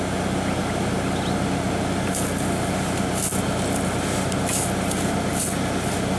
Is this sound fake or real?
real